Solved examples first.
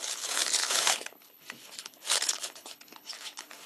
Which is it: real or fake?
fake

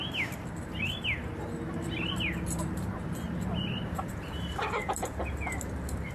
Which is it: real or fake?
real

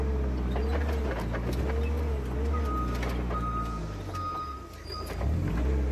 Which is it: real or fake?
real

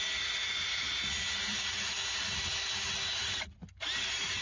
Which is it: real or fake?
real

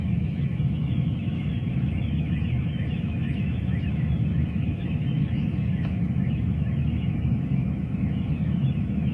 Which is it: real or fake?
fake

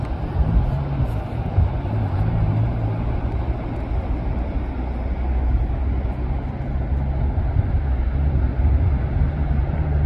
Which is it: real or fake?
real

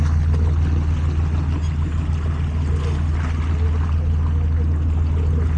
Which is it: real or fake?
real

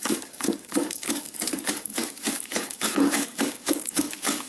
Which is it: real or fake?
fake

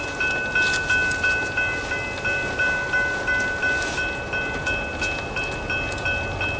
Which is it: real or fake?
real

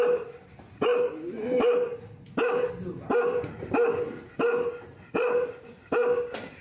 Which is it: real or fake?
real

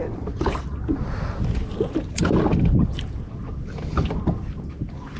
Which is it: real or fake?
real